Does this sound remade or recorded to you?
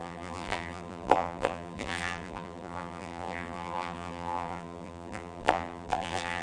remade